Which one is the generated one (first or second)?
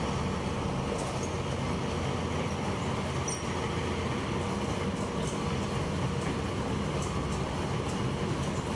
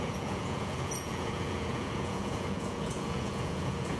second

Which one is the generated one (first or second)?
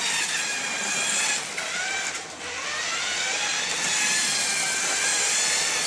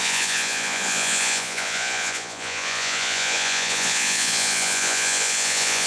second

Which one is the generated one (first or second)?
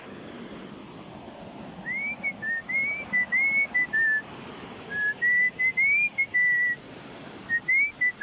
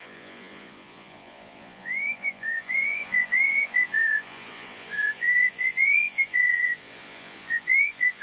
second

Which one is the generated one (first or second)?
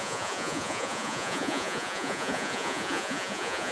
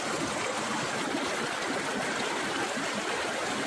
first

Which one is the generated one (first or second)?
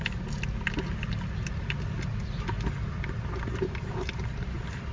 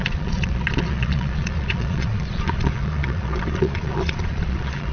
second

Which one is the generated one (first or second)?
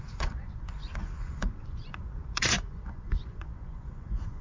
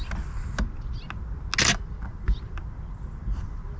first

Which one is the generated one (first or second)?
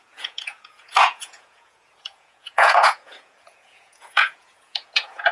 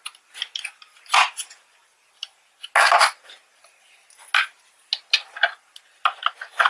first